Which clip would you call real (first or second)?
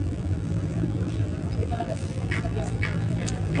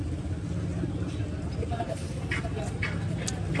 second